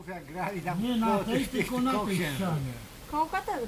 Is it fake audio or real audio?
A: real